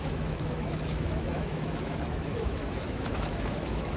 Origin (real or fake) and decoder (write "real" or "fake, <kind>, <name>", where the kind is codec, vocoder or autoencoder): fake, autoencoder, DAC-VAE